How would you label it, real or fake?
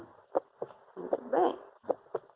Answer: real